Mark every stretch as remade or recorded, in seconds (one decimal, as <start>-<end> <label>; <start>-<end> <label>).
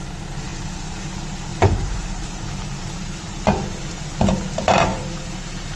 0.0-1.5 recorded; 1.5-4.0 remade; 4.0-4.9 recorded; 4.9-5.8 remade